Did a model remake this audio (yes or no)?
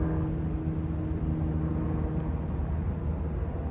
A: no